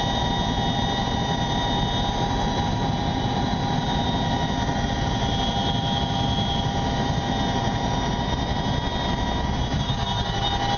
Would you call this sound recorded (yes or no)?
no